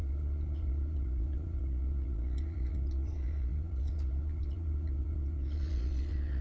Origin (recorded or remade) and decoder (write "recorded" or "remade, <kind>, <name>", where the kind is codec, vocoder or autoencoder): remade, vocoder, Vocos